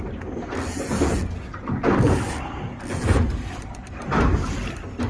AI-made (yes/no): no